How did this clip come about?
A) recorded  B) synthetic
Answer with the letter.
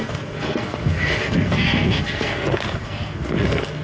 B